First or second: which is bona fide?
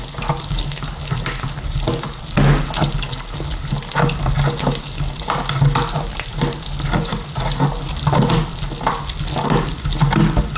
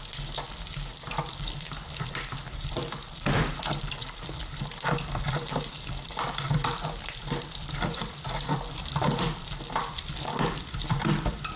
first